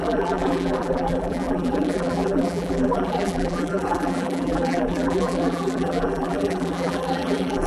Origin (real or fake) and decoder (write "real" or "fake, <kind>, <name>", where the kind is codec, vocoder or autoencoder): fake, vocoder, BigVGAN v2